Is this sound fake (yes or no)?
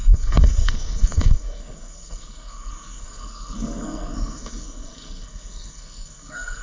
yes